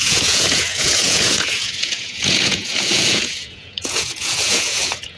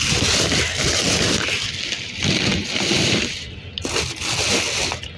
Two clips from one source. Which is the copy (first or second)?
first